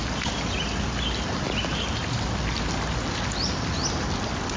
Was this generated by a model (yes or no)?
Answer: no